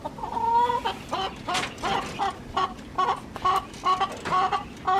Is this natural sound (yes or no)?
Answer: yes